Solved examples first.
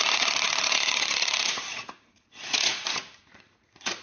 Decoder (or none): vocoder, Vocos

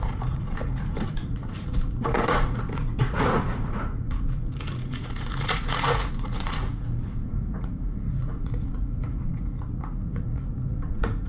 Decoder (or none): vocoder, Vocos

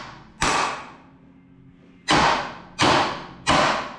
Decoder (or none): none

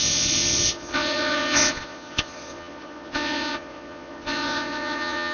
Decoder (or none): vocoder, Vocos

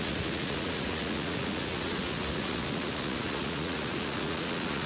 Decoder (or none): vocoder, Vocos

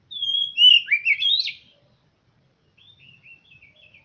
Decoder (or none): none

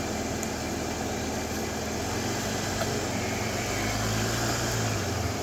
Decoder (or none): none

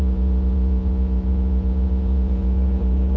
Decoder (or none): vocoder, Vocos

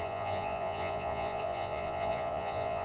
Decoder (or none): vocoder, Vocos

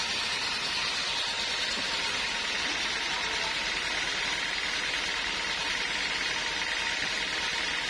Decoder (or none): none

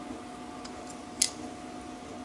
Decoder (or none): none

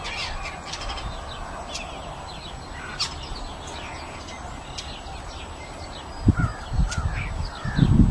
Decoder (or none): none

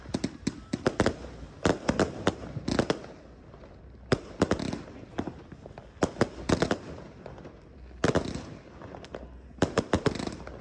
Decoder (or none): none